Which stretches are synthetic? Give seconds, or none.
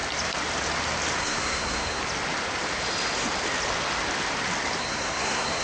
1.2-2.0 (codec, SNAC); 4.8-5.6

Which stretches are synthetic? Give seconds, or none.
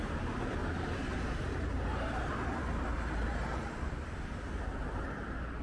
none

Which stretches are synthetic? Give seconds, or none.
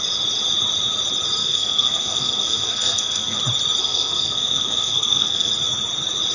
1.4-3.4 (codec, SNAC); 3.8-5.5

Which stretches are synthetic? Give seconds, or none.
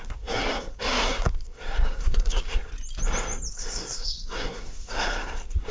0.0-2.7 (codec, SNAC); 3.5-5.7